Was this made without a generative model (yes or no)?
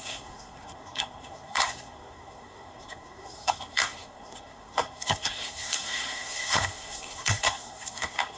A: no